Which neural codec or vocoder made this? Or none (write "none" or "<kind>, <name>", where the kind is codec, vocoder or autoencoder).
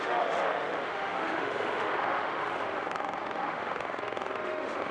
autoencoder, DAC-VAE